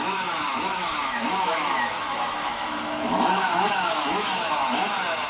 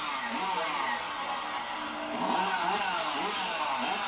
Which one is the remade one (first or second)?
first